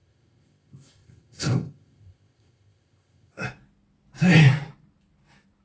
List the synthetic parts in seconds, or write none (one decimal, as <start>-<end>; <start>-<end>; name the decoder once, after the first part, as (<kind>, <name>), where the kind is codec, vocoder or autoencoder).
0.0-3.4 (codec, ZipCodec)

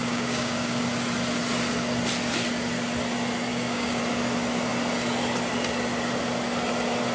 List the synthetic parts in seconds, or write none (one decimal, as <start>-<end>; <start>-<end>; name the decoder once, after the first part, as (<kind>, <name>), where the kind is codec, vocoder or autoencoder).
0.0-0.8 (codec, DAC); 3.5-4.0

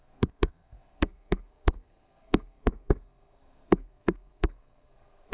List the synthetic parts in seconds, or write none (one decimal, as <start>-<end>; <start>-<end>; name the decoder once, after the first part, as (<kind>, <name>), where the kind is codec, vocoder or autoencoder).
0.0-5.3 (codec, SNAC)

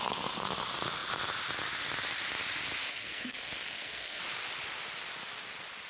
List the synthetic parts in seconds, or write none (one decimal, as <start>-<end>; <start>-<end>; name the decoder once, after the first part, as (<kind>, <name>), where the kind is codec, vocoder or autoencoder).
2.9-4.2 (codec, SNAC)

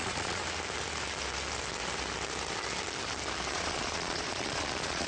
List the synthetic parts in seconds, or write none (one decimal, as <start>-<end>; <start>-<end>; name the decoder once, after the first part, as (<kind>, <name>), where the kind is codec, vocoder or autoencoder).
0.0-0.4 (vocoder, Vocos); 3.5-5.1